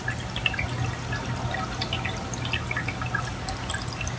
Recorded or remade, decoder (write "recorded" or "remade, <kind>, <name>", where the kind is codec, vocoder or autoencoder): recorded